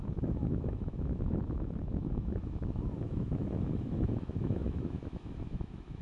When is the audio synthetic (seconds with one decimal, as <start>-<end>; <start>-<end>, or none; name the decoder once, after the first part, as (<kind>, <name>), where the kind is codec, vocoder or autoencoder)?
0.0-6.0 (autoencoder, DAC-VAE)